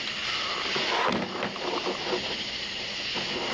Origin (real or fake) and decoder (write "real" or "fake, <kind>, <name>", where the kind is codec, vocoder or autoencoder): real